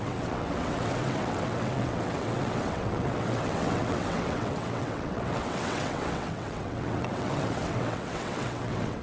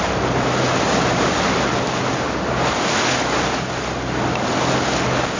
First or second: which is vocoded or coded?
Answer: first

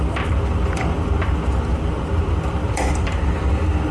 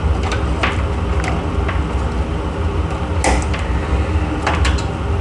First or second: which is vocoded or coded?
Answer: first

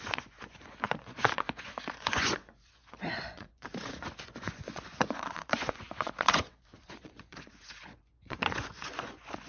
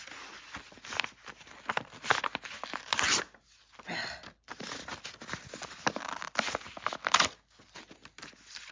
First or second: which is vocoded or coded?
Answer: first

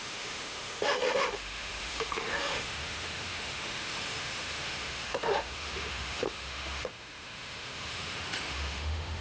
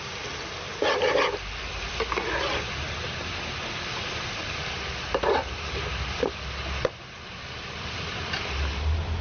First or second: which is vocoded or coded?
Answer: first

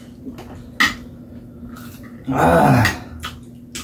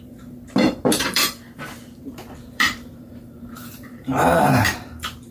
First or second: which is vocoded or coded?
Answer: second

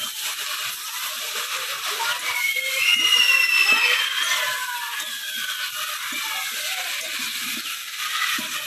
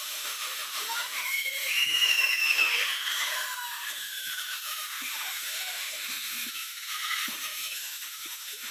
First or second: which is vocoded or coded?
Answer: second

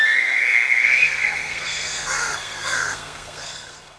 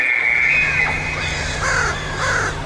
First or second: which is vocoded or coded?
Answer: first